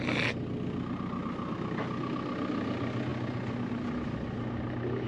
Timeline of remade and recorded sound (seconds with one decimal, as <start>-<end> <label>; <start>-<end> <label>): 0.0-5.1 recorded